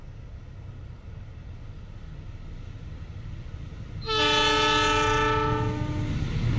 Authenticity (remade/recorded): recorded